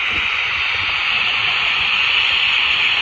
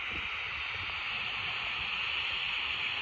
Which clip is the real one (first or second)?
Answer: second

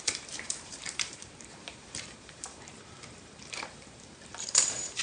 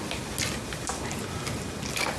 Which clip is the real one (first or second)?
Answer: second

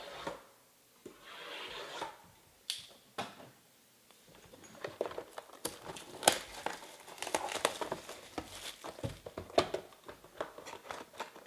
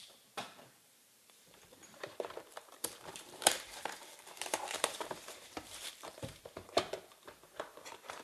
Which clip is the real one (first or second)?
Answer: first